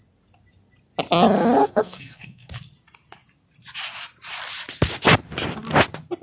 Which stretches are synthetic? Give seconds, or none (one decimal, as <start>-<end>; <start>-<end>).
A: 1.6-2.5